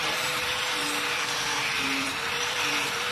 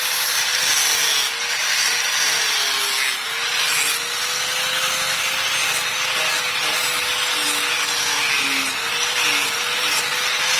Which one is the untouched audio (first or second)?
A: second